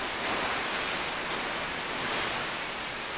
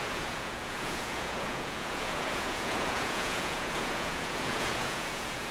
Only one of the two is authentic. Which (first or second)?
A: first